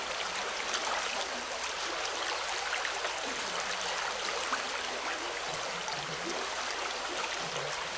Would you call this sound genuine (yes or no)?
no